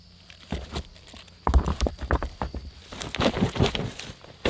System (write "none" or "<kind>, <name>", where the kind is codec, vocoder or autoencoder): none